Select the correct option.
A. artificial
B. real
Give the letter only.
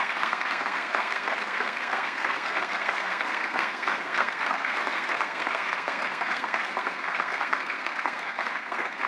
A